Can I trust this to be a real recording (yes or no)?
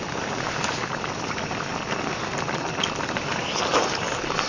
yes